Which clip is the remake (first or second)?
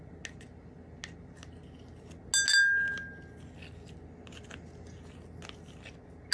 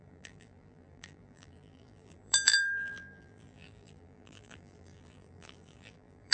second